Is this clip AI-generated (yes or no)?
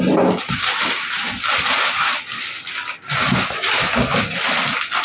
no